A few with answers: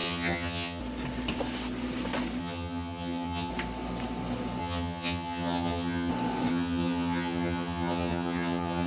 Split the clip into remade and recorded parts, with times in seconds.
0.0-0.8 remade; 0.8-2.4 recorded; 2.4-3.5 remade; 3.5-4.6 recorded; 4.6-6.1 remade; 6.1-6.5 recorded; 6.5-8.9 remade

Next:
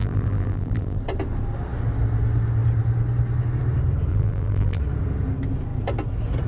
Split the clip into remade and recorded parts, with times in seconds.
0.0-1.0 remade; 1.0-4.1 recorded; 4.1-4.8 remade; 4.8-6.5 recorded

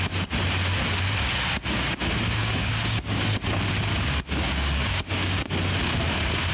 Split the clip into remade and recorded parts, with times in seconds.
0.0-2.4 recorded; 2.4-3.4 remade; 3.4-3.9 recorded; 3.9-5.5 remade; 5.5-6.5 recorded